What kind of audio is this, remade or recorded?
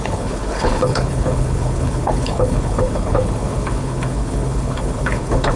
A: remade